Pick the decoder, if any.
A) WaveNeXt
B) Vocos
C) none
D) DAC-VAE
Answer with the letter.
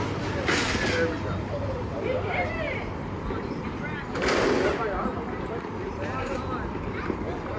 C